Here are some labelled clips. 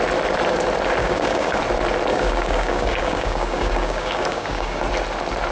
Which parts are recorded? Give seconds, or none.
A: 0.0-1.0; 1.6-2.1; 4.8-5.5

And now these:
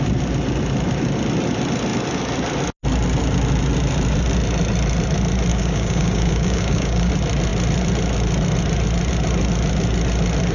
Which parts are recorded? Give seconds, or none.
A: 0.0-5.5; 7.1-10.5

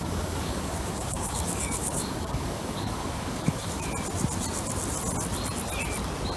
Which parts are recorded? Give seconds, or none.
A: 3.8-6.4

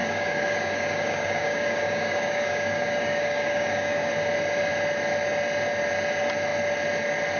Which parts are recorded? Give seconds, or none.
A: 4.1-7.4

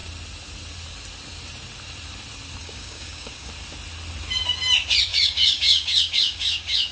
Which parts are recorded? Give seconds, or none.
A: 0.0-2.6; 3.5-5.1

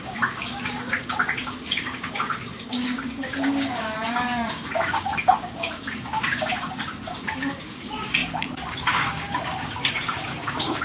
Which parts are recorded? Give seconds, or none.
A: none

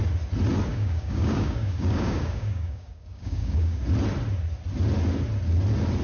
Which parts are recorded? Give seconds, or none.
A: 0.0-0.7; 3.8-6.0

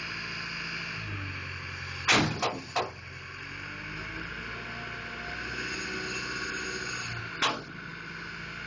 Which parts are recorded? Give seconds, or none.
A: 0.0-8.7